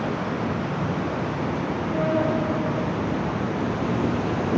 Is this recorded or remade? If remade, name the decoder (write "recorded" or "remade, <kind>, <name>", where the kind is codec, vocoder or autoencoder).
recorded